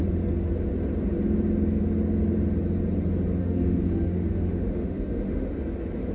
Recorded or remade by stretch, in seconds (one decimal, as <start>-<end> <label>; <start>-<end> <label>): 0.0-3.4 recorded; 3.4-5.5 remade; 5.5-6.1 recorded